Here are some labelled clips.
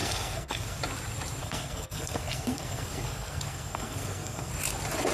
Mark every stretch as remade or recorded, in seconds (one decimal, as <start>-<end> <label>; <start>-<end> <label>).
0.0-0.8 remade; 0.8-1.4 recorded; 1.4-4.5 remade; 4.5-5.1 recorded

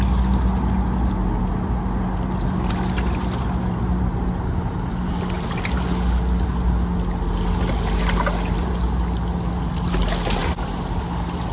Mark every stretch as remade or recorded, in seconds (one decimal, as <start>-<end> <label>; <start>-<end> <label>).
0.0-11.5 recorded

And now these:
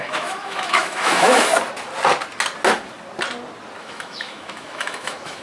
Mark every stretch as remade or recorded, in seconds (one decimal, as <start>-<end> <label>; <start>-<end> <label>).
0.0-1.5 remade; 1.5-3.8 recorded; 3.8-5.4 remade

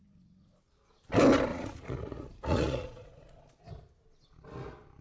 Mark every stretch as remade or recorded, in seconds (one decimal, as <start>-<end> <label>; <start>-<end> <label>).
0.0-1.5 recorded; 1.5-3.4 remade; 3.4-5.0 recorded

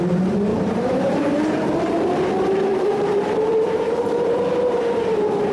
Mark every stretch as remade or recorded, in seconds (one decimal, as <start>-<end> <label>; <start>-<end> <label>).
0.0-0.5 recorded; 0.5-1.8 remade; 1.8-2.7 recorded; 2.7-4.8 remade; 4.8-5.5 recorded

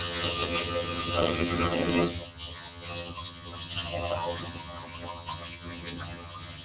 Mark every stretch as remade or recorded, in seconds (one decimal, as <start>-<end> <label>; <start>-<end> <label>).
0.0-6.6 remade